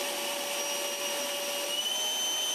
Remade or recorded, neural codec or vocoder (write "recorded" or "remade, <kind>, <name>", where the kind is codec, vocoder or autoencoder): recorded